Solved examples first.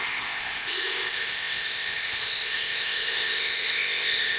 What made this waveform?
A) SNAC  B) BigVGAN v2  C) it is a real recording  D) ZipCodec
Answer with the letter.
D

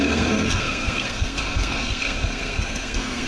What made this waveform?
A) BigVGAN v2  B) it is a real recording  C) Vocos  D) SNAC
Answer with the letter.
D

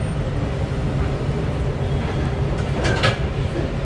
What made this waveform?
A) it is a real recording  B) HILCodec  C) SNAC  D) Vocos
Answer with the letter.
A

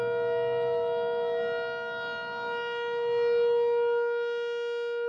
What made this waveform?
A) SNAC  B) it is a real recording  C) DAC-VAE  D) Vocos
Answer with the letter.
B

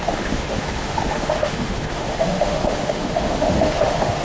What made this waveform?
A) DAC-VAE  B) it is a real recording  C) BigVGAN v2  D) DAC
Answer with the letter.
A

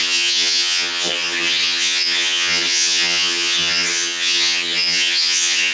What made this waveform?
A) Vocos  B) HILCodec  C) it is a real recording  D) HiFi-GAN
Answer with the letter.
D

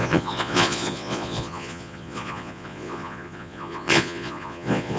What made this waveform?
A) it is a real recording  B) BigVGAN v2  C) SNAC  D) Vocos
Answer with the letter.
D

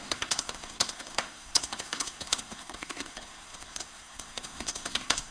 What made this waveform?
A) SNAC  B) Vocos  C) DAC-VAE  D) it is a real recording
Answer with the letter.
A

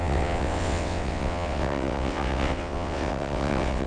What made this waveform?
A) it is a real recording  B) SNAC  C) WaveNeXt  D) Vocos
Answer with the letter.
C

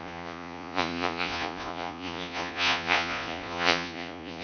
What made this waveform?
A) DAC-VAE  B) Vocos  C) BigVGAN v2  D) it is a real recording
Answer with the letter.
B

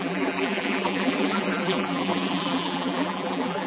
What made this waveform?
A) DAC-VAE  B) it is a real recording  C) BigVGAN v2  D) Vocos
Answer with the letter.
C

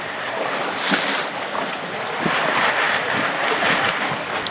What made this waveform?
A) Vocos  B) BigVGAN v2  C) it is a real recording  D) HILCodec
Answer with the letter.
B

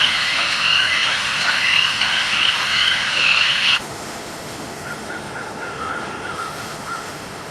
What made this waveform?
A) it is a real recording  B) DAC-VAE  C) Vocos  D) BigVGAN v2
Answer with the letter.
B